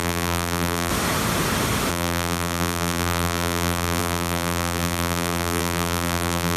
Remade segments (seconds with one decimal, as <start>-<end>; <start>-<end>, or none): 0.0-0.9; 1.9-6.6